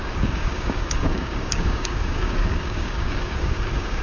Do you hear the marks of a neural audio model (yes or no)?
yes